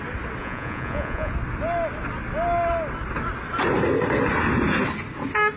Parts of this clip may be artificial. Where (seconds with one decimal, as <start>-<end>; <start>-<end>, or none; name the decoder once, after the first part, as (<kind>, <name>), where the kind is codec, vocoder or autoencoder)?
0.4-1.3 (vocoder, Vocos)